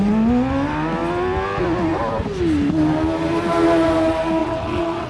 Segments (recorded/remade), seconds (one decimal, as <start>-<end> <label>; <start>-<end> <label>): 0.0-4.4 recorded; 4.4-5.1 remade